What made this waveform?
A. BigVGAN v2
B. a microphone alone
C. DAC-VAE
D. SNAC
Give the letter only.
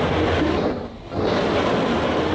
B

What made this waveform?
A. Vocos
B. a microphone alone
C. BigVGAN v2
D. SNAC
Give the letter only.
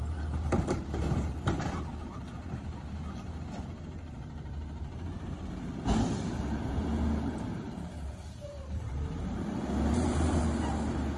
C